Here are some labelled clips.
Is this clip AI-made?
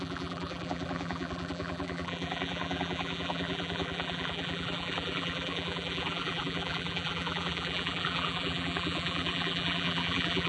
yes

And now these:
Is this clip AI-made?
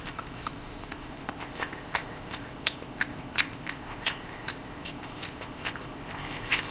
yes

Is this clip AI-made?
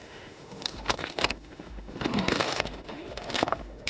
yes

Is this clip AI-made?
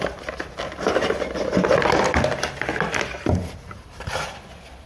no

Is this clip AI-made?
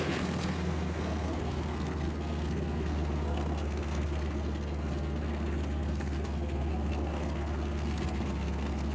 yes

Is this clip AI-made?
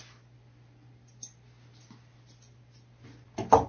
no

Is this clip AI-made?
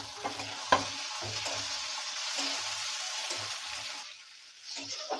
no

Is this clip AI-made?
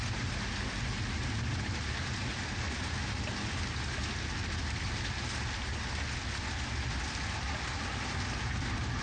no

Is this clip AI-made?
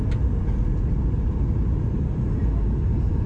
yes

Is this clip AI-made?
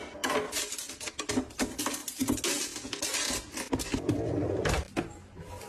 no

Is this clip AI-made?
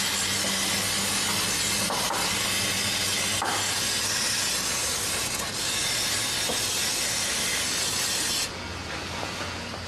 no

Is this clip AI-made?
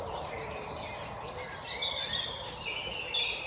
no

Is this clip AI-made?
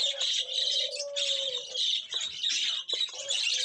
no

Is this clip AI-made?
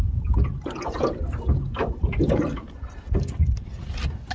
no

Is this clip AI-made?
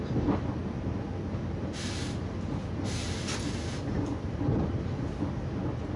no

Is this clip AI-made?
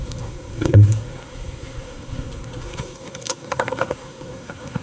yes